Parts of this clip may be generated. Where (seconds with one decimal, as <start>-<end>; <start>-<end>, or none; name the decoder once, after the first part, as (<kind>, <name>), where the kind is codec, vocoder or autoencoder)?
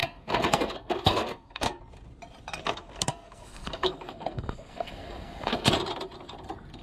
0.0-1.8 (codec, SNAC); 2.5-5.7